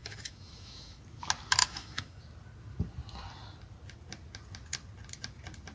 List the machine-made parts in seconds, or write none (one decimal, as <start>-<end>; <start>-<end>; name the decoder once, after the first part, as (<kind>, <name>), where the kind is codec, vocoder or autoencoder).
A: 0.0-1.0 (autoencoder, DAC-VAE); 1.6-2.2